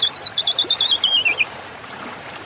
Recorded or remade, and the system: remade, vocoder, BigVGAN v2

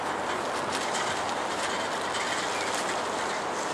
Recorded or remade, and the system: recorded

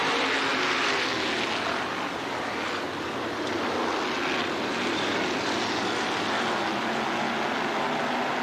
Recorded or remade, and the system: recorded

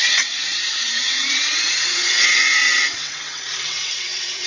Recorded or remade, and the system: remade, vocoder, WaveNeXt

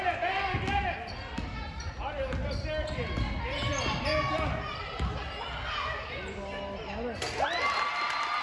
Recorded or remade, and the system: recorded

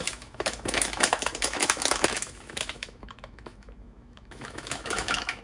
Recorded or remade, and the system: remade, autoencoder, DAC-VAE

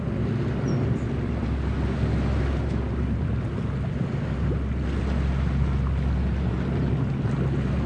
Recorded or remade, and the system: recorded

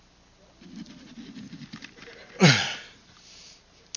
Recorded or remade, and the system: recorded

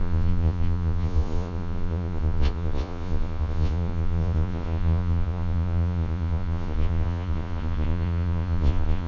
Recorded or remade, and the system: remade, vocoder, Vocos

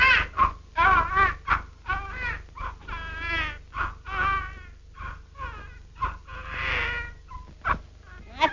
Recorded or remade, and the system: recorded